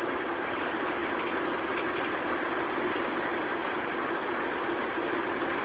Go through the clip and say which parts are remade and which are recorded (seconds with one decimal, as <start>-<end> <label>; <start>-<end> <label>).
0.0-5.6 recorded